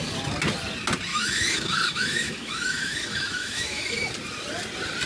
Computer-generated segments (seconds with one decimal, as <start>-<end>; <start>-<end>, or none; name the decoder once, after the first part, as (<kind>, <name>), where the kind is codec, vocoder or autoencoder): 1.1-4.0 (autoencoder, DAC-VAE)